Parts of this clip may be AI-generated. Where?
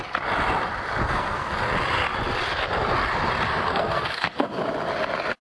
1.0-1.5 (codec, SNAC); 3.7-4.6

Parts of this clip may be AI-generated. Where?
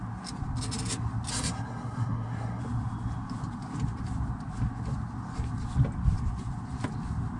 1.3-2.6 (codec, SNAC)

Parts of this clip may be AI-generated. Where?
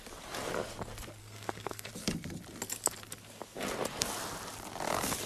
1.2-1.9 (codec, SNAC)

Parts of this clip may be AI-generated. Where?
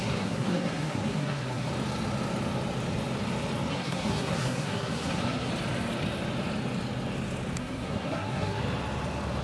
0.0-1.7 (codec, SNAC); 3.7-5.5; 7.6-8.6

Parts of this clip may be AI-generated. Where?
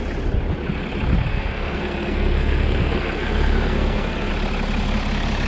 1.3-4.3 (codec, SNAC)